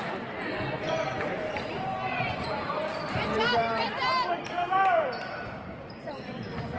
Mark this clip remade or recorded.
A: remade